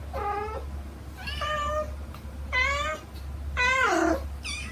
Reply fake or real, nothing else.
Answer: real